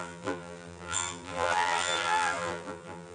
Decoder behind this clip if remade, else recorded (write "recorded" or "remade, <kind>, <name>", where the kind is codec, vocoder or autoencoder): remade, vocoder, BigVGAN v2